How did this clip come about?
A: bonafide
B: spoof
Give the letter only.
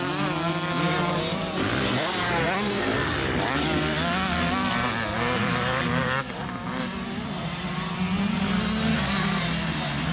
A